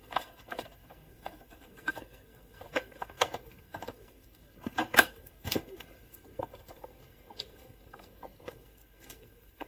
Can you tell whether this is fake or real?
fake